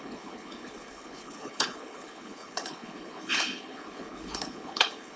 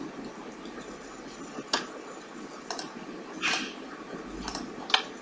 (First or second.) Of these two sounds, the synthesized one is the first